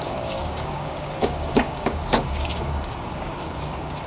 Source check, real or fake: fake